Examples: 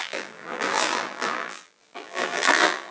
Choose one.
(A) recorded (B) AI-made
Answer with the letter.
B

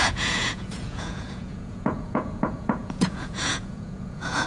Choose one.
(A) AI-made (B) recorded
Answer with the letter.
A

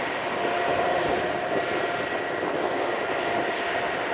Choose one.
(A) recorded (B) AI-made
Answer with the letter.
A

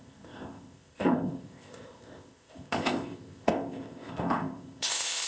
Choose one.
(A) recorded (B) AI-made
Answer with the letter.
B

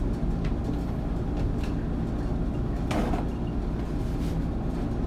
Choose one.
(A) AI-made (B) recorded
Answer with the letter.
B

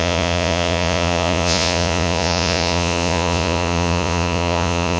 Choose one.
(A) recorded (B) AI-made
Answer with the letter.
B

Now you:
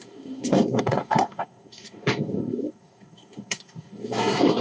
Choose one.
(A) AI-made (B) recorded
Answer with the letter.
A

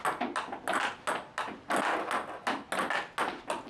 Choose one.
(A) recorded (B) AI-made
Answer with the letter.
A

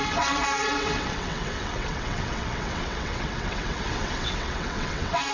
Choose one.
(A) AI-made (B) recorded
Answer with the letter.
A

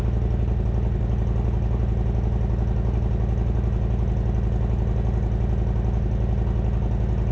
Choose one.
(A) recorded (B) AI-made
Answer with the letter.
A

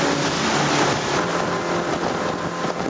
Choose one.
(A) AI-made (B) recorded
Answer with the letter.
B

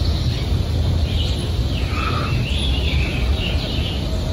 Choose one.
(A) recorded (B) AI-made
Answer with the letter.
A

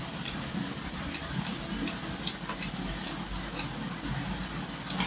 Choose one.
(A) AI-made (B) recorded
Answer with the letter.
B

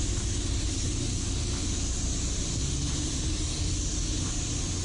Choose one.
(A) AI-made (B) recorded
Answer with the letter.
B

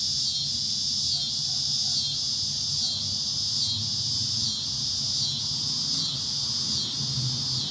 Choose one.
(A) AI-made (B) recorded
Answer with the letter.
B